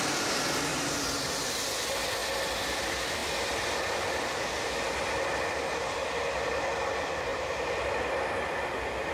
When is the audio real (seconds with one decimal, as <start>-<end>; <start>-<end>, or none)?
0.0-0.7; 1.4-7.3; 8.3-9.1